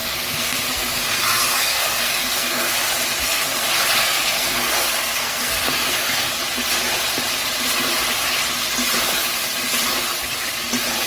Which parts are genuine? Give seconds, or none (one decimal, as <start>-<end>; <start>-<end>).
2.8-3.2; 6.4-11.1